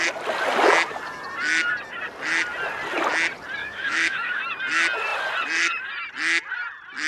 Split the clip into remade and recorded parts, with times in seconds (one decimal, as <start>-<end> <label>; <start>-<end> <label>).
0.0-3.6 recorded; 3.6-4.4 remade; 4.4-7.1 recorded